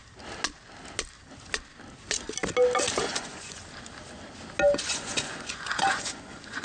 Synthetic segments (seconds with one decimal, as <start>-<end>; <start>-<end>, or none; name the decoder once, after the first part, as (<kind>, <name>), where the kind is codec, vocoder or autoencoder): 3.0-3.6 (vocoder, Vocos); 4.8-6.6